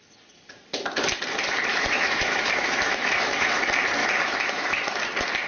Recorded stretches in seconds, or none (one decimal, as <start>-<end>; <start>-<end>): 0.0-1.7; 3.6-4.0; 5.0-5.5